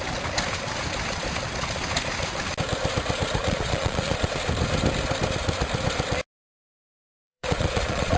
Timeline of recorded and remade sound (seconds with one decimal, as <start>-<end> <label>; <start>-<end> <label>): 0.0-3.4 recorded; 3.4-4.3 remade; 4.3-6.7 recorded; 6.7-8.2 remade